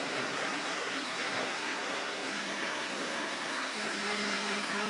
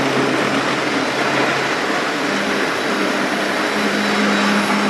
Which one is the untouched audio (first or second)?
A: second